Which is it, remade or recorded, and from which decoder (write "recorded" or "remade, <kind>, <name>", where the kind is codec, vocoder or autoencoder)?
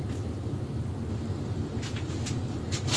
recorded